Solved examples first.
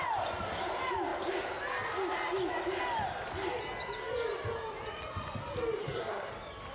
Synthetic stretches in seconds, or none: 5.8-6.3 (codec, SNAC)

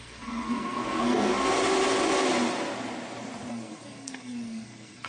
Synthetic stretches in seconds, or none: 0.0-1.3 (codec, SNAC); 3.5-5.1